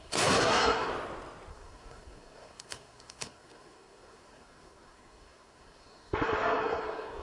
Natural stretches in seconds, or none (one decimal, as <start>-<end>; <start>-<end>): 0.9-1.5